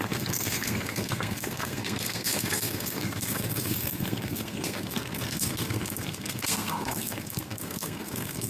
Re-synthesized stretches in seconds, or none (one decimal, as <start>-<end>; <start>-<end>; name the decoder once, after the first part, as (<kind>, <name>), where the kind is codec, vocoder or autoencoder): 0.0-8.5 (codec, SNAC)